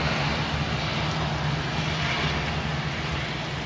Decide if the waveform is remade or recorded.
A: recorded